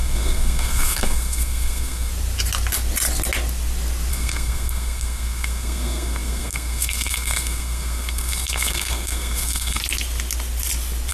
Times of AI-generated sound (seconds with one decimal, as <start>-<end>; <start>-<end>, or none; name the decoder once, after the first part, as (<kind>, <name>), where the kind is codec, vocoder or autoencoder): 0.0-2.1 (codec, SNAC); 4.1-9.8